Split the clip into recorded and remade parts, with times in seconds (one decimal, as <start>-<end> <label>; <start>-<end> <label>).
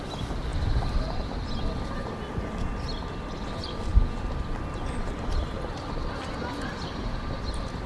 0.0-7.9 recorded